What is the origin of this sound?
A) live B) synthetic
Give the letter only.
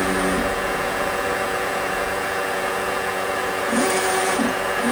B